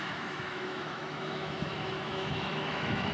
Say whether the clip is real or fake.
fake